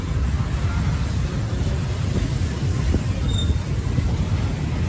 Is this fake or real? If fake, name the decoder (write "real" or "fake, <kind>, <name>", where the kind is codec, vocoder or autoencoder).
real